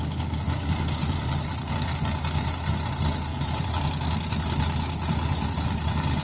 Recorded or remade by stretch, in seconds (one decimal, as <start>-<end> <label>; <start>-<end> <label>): 0.0-1.0 recorded; 1.0-1.7 remade; 1.7-3.3 recorded; 3.3-3.8 remade; 3.8-6.2 recorded